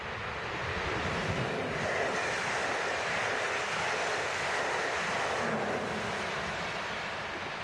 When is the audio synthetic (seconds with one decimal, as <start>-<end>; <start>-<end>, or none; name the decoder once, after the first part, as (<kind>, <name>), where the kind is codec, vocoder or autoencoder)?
none